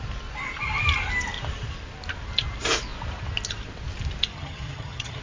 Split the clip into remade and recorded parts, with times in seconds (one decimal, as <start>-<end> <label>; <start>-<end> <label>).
0.0-4.3 recorded; 4.3-5.2 remade